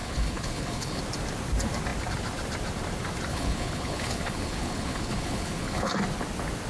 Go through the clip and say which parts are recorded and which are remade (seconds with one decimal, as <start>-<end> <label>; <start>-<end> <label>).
0.0-1.0 remade; 1.0-3.3 recorded; 3.3-5.9 remade; 5.9-6.7 recorded